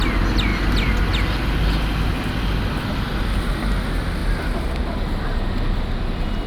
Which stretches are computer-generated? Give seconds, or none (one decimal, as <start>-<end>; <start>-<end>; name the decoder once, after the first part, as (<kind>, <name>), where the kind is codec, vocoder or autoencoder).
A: none